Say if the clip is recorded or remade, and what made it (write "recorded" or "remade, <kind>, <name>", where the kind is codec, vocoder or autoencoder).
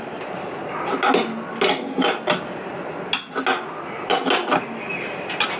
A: recorded